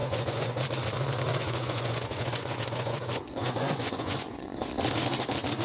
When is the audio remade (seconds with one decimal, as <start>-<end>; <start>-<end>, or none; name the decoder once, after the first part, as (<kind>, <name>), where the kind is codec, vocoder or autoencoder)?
0.0-0.6 (vocoder, Vocos); 1.3-4.7